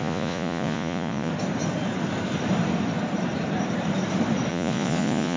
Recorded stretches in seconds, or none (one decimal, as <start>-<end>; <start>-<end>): 1.3-4.5